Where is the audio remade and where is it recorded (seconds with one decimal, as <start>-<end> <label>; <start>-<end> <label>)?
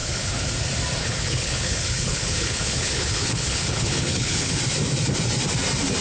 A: 0.0-0.5 remade; 0.5-1.0 recorded; 1.0-4.6 remade; 4.6-6.0 recorded